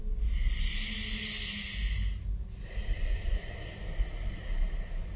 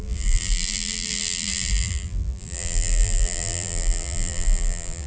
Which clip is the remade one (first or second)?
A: second